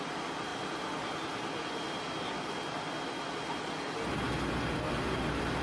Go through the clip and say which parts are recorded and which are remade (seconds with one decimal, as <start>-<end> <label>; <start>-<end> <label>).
0.0-5.6 recorded